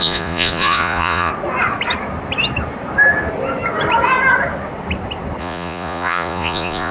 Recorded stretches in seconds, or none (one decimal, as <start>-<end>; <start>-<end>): 1.3-5.4

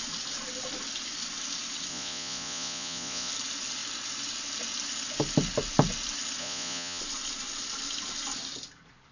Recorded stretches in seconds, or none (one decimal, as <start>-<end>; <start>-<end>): 0.0-1.9; 3.3-6.4; 7.0-9.1

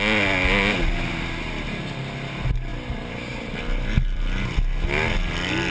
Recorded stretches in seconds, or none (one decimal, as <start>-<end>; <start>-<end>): 0.0-5.7

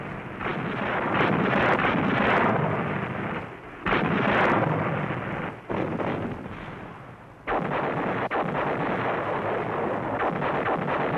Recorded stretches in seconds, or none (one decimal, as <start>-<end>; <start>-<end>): 0.0-11.2

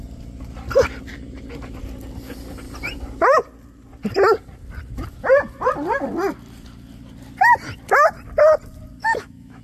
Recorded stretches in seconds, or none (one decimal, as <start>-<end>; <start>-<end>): 0.0-9.0

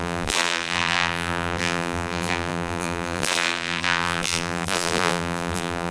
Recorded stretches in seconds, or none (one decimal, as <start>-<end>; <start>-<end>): none

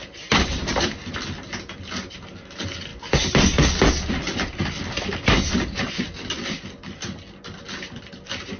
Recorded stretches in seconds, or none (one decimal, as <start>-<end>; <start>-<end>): 0.0-8.6

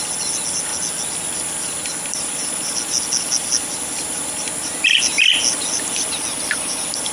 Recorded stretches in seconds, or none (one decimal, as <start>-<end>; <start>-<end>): 0.0-7.1